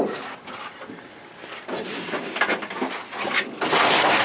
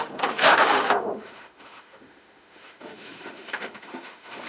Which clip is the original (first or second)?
first